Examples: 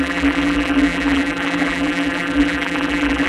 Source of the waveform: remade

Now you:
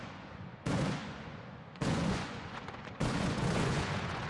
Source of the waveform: remade